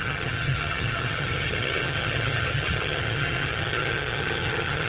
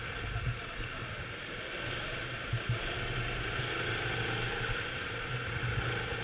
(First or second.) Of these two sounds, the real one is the second